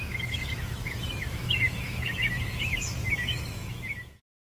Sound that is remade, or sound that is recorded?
remade